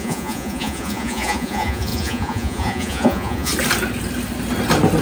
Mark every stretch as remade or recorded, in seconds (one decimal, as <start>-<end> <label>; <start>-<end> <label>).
0.0-3.5 remade; 3.5-5.0 recorded